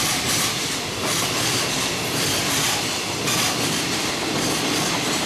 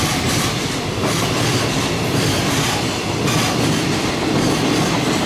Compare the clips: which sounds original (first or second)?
second